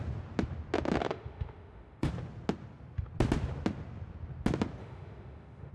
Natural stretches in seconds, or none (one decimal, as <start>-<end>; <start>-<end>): 0.0-1.0; 2.1-4.8